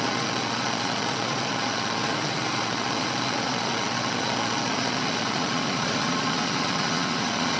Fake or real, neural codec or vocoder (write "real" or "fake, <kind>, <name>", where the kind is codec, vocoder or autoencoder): fake, vocoder, Vocos